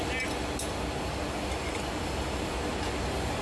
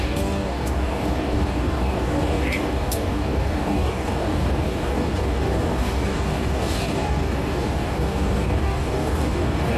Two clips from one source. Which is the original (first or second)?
first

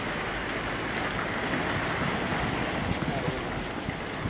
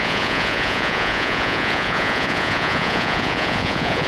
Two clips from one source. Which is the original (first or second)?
first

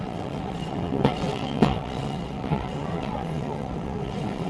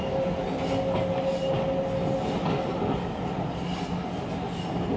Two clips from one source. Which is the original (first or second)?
second